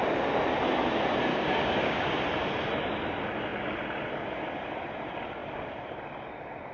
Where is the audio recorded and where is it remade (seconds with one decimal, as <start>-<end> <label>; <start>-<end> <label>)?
0.0-1.3 recorded; 1.3-2.2 remade; 2.2-6.7 recorded

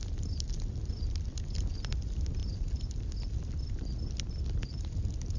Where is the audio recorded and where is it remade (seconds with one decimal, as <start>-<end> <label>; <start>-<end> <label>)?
0.0-5.4 recorded

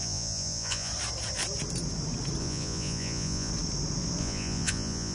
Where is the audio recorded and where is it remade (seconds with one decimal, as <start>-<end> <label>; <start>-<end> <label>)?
0.0-0.9 remade; 0.9-2.4 recorded; 2.4-3.5 remade; 3.5-4.2 recorded; 4.2-5.1 remade

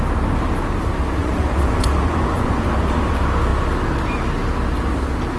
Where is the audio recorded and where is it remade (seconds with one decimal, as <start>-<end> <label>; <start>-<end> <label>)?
0.0-1.2 recorded; 1.2-2.6 remade; 2.6-5.4 recorded

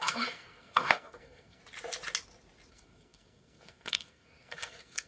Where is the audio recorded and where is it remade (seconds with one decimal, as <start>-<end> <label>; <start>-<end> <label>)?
0.0-1.6 remade; 1.6-2.7 recorded; 2.7-5.1 remade

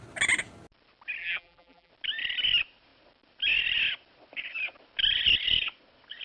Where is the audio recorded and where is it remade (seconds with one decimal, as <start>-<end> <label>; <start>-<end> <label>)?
0.0-1.2 recorded; 1.2-1.9 remade; 1.9-6.2 recorded